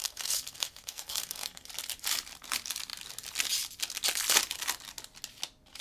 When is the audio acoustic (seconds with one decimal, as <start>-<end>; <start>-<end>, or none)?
1.7-5.8